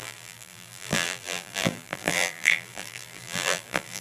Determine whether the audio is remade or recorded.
remade